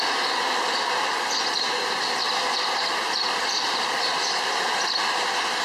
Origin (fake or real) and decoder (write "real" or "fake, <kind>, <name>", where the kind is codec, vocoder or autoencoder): real